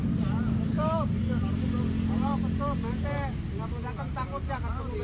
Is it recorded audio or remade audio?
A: recorded